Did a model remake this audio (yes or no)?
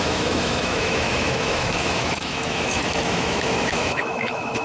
yes